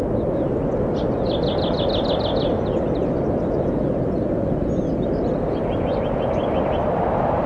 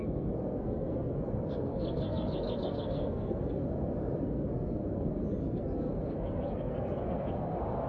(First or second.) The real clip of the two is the first